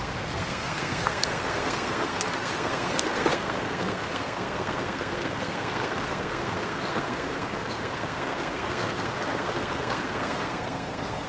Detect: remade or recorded remade